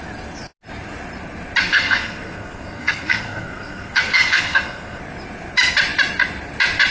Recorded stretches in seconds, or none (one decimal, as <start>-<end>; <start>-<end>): 0.0-1.6; 5.0-6.9